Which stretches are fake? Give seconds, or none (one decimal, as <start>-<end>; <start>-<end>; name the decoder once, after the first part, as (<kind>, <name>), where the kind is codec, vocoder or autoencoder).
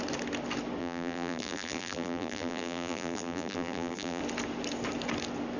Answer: 0.8-4.2 (vocoder, BigVGAN v2)